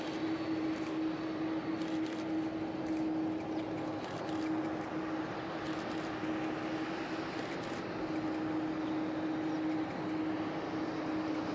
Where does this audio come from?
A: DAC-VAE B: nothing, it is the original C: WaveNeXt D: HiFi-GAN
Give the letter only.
B